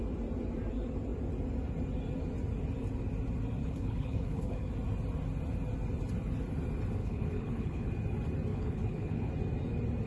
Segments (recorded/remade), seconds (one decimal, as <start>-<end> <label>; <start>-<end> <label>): 0.0-3.6 recorded; 3.6-4.7 remade; 4.7-7.0 recorded; 7.0-7.9 remade; 7.9-8.5 recorded; 8.5-9.3 remade; 9.3-10.1 recorded